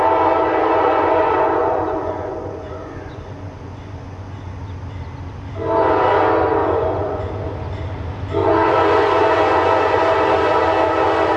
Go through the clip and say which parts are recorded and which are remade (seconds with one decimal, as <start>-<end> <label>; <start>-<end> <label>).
0.0-0.7 recorded; 0.7-4.6 remade; 4.6-6.6 recorded; 6.6-7.3 remade; 7.3-8.4 recorded; 8.4-10.0 remade; 10.0-11.4 recorded